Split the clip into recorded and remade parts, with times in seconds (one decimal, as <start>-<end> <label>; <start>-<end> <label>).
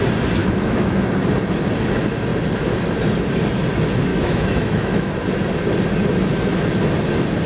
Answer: 0.0-0.4 recorded; 0.4-1.0 remade; 1.0-4.1 recorded; 4.1-5.1 remade; 5.1-7.5 recorded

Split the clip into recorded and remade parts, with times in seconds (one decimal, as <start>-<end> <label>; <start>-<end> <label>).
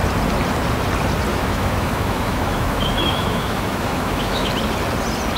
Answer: 0.0-1.3 recorded; 1.3-4.5 remade; 4.5-5.4 recorded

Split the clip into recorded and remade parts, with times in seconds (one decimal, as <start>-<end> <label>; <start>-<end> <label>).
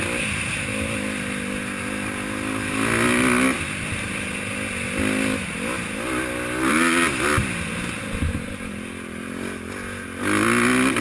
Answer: 0.0-11.0 recorded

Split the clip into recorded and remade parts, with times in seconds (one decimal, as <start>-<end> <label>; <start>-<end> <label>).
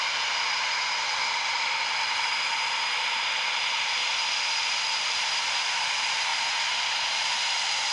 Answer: 0.0-7.9 recorded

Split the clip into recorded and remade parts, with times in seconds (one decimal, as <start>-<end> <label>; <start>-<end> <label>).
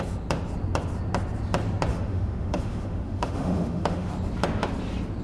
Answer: 0.0-1.9 recorded; 1.9-4.1 remade; 4.1-5.2 recorded